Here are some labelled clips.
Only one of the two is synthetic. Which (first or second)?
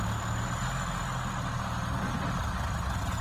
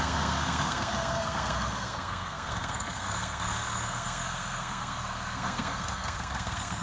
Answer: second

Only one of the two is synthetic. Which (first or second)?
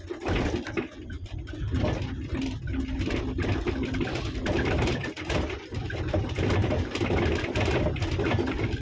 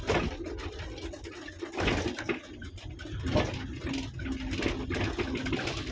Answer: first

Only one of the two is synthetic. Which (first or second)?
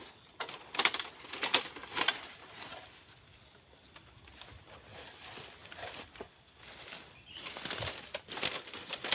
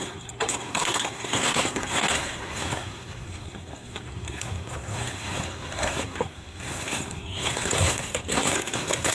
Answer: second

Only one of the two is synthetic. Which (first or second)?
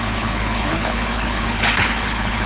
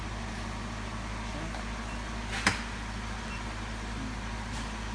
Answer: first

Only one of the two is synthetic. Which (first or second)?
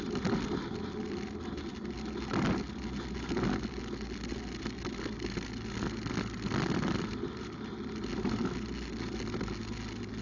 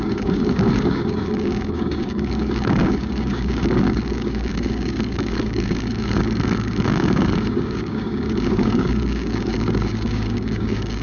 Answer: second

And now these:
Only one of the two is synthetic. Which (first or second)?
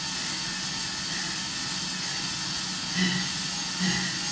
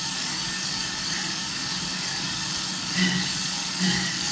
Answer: second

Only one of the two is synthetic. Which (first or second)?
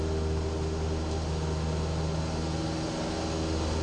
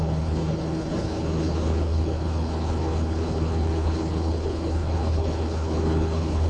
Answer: second